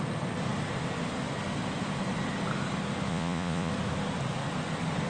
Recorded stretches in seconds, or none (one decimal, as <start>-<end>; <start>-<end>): 0.0-3.1; 3.7-5.1